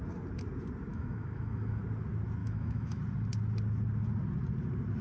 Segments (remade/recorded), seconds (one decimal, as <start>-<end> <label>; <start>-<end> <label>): 0.0-0.9 recorded; 0.9-1.8 remade; 1.8-2.4 recorded; 2.4-3.0 remade; 3.0-5.0 recorded